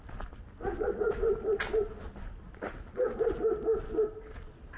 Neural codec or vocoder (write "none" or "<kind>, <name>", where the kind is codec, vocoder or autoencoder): none